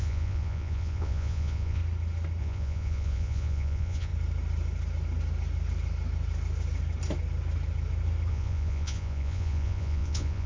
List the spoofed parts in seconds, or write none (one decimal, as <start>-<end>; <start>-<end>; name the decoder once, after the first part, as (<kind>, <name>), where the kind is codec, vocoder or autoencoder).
0.0-1.8 (vocoder, Vocos); 2.4-4.1; 8.3-10.5